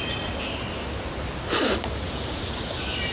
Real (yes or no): yes